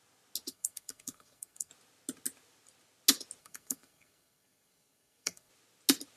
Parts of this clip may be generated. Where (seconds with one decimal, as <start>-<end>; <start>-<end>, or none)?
0.5-1.7; 3.4-5.5